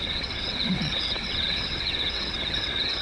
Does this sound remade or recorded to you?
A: remade